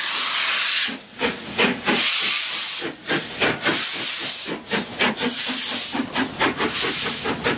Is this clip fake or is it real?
real